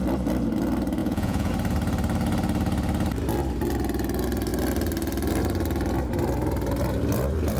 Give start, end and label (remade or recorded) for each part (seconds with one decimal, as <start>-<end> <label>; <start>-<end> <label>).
0.0-1.0 recorded; 1.0-1.5 remade; 1.5-7.6 recorded